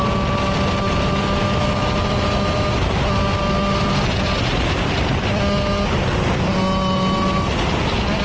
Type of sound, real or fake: real